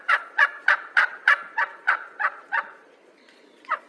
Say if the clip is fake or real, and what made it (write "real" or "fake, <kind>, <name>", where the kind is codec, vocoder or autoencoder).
fake, vocoder, Vocos